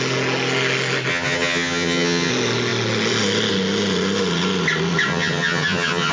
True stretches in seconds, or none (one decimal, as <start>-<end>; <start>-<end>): 0.0-1.1; 2.3-5.1